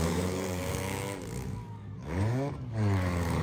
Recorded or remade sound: remade